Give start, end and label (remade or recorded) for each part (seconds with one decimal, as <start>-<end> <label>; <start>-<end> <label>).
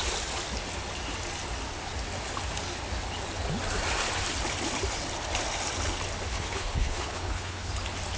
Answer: 0.0-6.3 recorded; 6.3-7.7 remade; 7.7-8.2 recorded